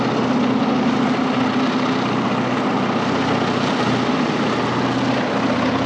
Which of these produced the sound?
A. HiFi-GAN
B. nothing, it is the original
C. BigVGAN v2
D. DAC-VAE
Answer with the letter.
B